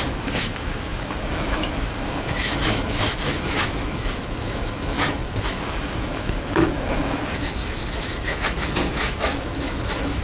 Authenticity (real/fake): fake